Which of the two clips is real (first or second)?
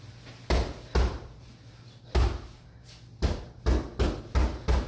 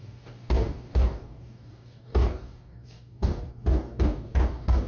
first